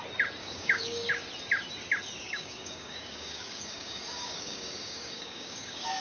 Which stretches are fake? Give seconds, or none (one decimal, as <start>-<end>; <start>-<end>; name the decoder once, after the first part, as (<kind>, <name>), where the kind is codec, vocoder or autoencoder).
0.4-1.1 (codec, DAC); 2.2-6.0